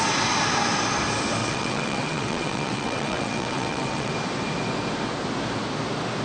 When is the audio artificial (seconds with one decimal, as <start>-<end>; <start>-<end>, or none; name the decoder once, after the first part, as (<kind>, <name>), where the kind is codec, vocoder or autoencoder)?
1.4-4.1 (vocoder, WaveNeXt)